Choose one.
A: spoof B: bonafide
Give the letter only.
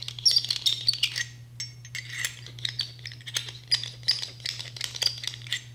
B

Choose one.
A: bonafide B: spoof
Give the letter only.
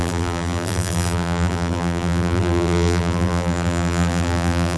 B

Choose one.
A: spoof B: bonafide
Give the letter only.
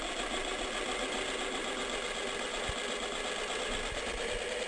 B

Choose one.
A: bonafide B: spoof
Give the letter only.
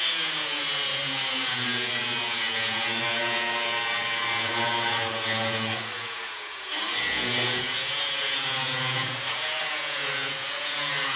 B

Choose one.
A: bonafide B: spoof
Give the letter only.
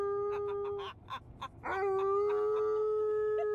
A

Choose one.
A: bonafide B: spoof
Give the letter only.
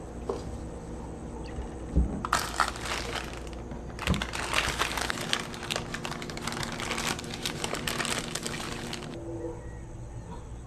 A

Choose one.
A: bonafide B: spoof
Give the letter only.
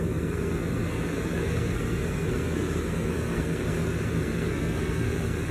B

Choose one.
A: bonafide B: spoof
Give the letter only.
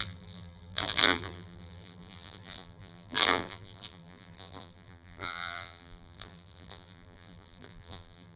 B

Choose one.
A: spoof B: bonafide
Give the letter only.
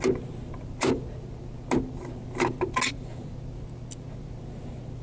B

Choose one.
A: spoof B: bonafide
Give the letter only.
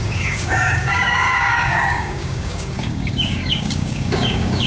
A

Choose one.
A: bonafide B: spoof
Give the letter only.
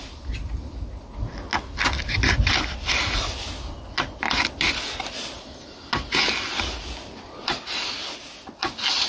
A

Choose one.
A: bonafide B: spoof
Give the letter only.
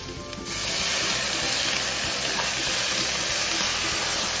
A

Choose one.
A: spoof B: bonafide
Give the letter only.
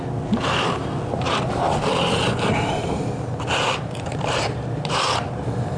B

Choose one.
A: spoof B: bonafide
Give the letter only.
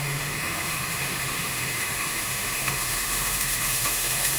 A